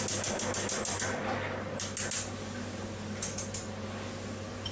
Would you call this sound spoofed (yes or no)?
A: no